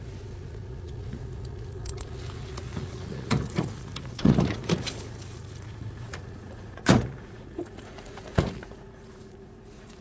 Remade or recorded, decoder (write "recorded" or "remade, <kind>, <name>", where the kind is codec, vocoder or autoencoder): remade, vocoder, Vocos